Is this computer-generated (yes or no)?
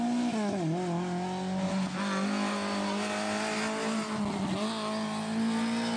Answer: no